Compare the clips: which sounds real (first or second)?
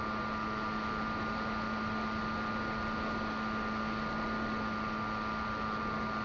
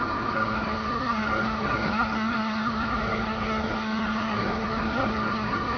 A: first